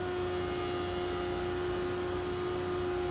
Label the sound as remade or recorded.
recorded